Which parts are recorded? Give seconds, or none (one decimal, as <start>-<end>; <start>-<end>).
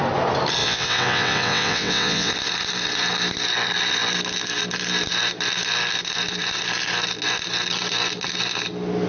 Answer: 0.0-0.6; 2.3-9.1